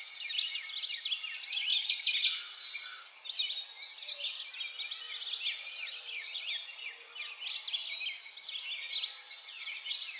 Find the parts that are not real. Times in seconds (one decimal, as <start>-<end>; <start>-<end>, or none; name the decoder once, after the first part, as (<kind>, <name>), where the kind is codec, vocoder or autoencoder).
none